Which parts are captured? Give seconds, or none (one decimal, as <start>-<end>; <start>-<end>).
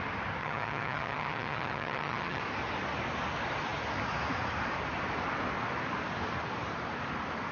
0.0-0.4; 2.4-7.5